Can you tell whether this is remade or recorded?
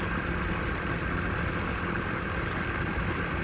recorded